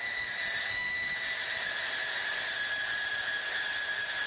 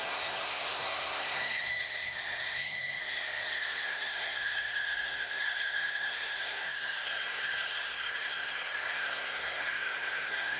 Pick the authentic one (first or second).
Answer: first